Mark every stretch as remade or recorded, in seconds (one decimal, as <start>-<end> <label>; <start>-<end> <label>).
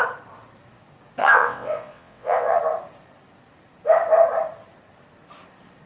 0.0-1.2 recorded; 1.2-2.6 remade; 2.6-5.9 recorded